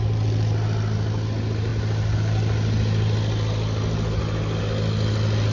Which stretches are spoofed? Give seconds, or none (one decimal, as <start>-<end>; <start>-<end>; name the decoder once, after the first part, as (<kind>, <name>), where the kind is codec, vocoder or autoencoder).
none

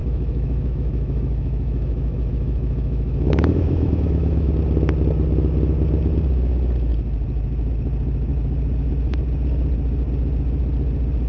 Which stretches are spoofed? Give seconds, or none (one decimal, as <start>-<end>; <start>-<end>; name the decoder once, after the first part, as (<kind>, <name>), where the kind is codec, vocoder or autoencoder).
0.0-4.5 (autoencoder, DAC-VAE)

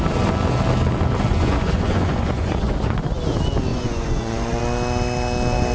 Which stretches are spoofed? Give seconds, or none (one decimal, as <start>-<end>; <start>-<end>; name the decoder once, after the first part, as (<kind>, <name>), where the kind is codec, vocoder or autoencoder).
1.3-3.1 (vocoder, Vocos); 3.7-4.6

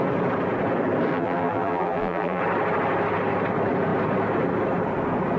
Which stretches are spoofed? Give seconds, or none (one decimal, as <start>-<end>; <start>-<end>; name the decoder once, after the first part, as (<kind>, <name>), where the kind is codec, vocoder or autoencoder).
1.1-2.4 (vocoder, BigVGAN v2)

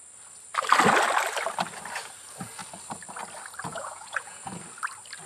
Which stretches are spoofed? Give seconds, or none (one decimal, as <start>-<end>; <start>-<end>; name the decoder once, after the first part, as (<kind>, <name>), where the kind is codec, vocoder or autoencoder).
3.7-4.6 (vocoder, Vocos)

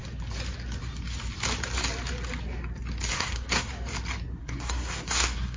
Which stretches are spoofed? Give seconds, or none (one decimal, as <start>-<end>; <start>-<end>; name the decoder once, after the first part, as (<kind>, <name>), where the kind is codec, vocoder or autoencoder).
3.1-3.7 (codec, SNAC); 4.4-5.6